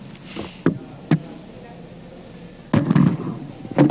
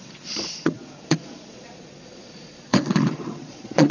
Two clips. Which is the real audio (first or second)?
first